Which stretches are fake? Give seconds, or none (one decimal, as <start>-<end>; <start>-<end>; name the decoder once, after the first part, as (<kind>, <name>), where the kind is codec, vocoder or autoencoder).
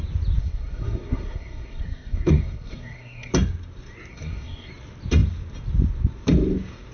0.4-3.3 (codec, SNAC); 4.1-4.7